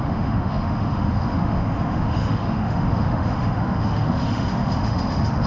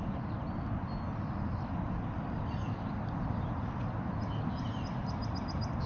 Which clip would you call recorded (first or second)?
second